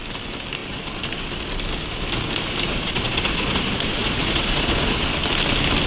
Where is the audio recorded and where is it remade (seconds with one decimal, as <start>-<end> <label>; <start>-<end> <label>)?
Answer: 0.0-2.7 recorded; 2.7-5.1 remade; 5.1-5.9 recorded